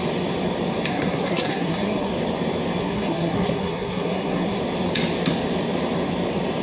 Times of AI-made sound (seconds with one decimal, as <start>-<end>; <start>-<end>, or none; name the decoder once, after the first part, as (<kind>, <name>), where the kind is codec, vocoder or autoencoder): 0.9-2.1 (codec, SNAC); 2.8-4.6